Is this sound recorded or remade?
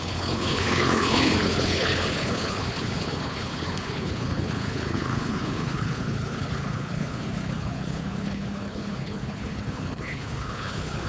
remade